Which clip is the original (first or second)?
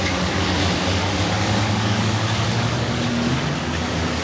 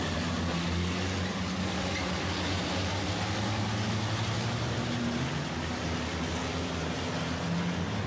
second